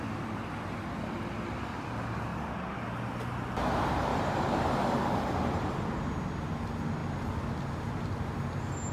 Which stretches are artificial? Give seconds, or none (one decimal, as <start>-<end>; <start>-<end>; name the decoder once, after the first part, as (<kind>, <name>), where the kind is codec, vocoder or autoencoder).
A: 4.1-6.1 (vocoder, BigVGAN v2)